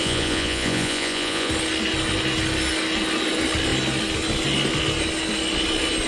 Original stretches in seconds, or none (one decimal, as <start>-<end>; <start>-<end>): 1.5-6.1